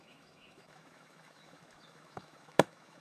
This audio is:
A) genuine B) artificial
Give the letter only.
B